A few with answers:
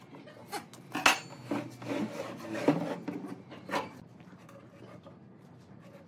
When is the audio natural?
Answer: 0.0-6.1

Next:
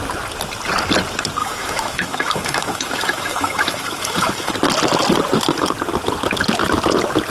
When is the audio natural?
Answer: 0.0-1.4; 4.5-7.3